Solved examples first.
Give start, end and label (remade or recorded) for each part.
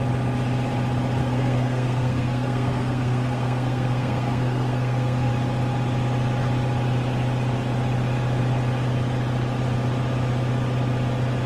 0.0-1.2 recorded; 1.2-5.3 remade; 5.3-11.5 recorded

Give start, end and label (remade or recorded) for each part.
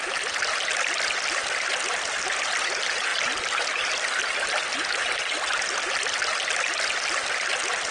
0.0-7.9 recorded